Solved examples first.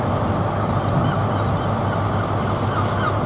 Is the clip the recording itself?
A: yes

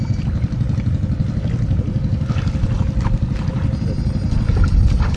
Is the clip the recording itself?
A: yes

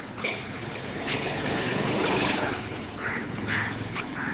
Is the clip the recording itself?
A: no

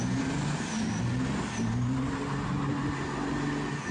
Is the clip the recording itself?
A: yes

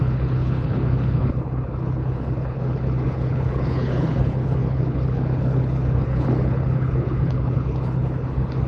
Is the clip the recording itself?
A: no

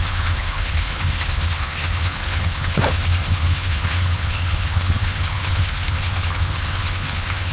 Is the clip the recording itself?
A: no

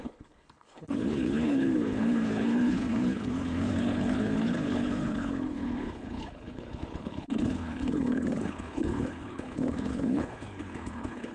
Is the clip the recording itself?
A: no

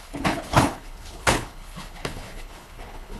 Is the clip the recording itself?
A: no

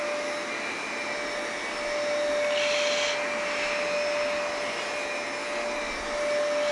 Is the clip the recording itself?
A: yes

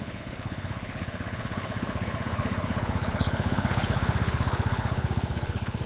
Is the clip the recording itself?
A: no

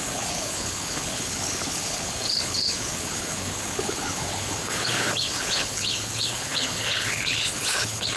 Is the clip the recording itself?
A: no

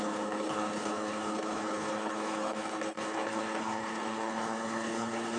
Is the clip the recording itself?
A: no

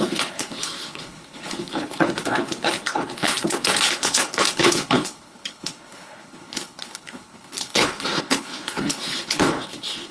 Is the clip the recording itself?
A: no